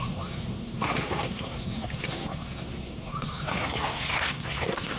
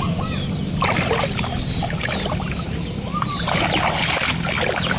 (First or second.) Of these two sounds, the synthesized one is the first